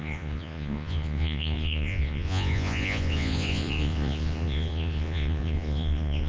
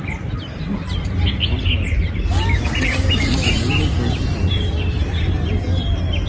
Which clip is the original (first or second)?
second